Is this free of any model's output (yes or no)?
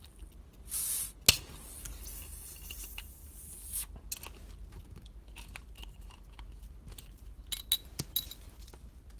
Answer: yes